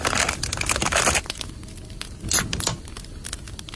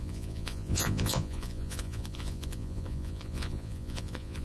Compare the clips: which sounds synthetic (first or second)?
second